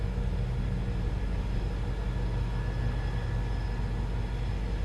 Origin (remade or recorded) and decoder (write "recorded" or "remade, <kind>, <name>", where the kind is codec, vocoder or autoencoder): recorded